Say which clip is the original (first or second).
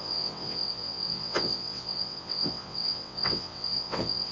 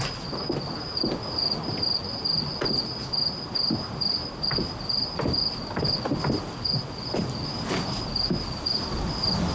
second